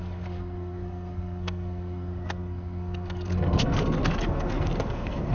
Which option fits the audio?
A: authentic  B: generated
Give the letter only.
B